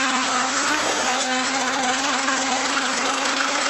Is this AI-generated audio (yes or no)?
yes